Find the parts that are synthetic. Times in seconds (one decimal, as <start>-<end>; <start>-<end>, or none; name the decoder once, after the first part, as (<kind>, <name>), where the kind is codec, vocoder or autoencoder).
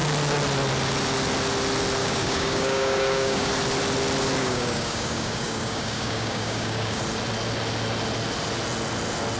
2.0-3.5 (codec, DAC); 4.4-7.0